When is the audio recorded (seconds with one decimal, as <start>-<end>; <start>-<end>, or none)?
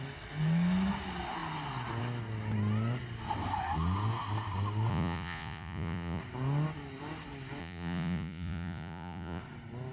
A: 0.0-4.9; 6.2-7.6; 9.4-9.9